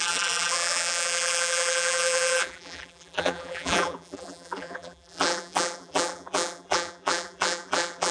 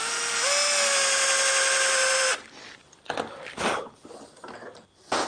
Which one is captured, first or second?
second